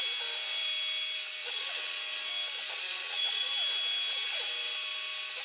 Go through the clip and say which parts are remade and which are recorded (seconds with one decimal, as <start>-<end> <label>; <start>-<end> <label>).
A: 0.0-1.4 recorded; 1.4-2.0 remade; 2.0-2.9 recorded; 2.9-3.5 remade; 3.5-5.4 recorded